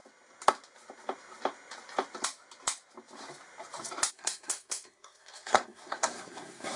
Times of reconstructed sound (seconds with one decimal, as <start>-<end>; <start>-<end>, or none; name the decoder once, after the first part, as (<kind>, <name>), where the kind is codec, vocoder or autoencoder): 4.1-6.8 (codec, SNAC)